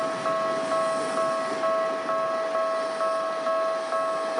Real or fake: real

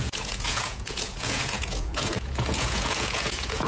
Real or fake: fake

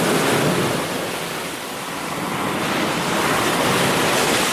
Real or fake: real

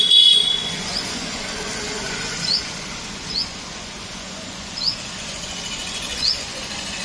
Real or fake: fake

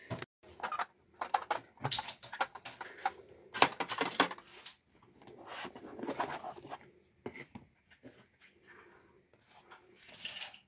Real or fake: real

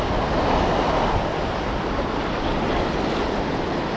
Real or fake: real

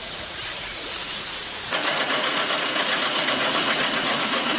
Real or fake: fake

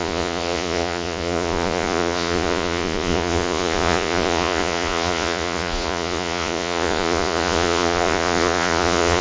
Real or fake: fake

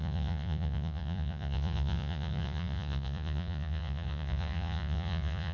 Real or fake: fake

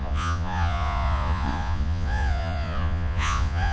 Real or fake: fake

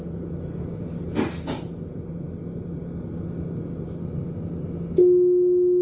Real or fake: real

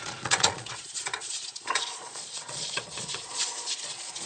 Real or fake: fake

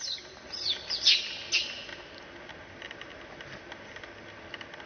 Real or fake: real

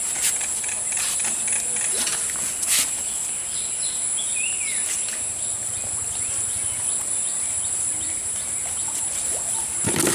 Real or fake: real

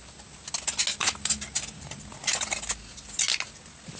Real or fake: real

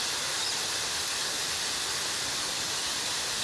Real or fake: real